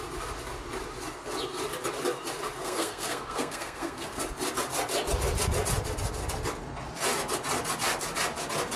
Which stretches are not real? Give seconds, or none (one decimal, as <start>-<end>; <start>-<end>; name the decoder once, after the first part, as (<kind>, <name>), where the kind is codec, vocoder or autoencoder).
2.6-4.2 (codec, SNAC)